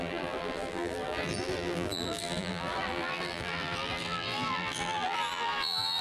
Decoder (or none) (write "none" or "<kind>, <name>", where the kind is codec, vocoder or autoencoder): vocoder, BigVGAN v2